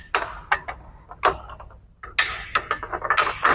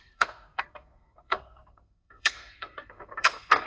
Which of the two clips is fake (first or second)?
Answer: second